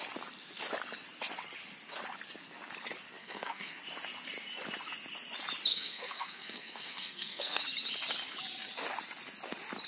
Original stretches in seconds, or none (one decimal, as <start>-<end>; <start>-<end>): 0.0-3.2; 3.8-5.7; 7.6-9.9